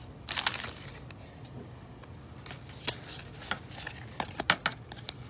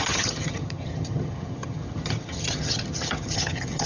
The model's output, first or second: second